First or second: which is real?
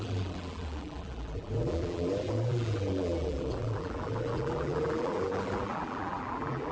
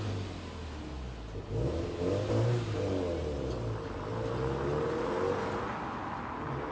second